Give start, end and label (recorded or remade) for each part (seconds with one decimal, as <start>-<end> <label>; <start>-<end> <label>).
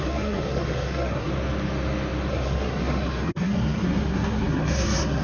0.0-1.3 remade; 1.3-2.3 recorded; 2.3-5.2 remade